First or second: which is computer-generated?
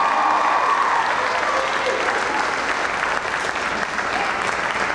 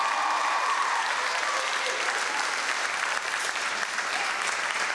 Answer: second